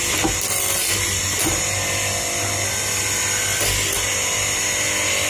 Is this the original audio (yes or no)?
yes